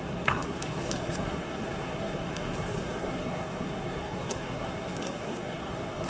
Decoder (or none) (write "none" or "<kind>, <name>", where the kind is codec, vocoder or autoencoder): codec, SNAC